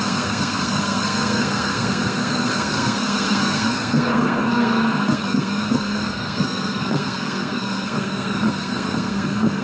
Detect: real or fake fake